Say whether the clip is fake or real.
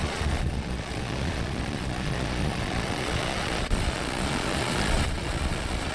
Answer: fake